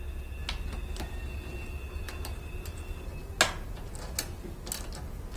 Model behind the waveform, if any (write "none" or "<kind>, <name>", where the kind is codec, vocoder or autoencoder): none